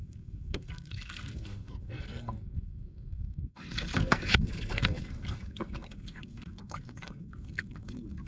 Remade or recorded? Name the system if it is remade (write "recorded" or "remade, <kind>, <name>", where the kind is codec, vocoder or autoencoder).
remade, codec, SNAC